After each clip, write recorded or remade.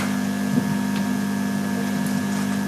recorded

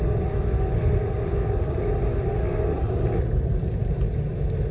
recorded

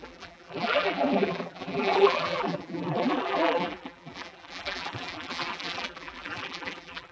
remade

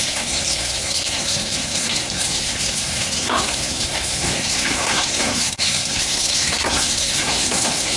remade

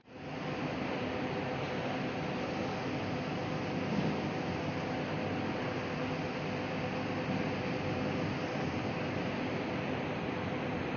recorded